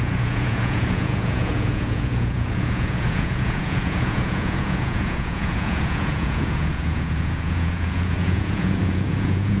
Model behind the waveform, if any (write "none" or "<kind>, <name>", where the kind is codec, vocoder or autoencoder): vocoder, Vocos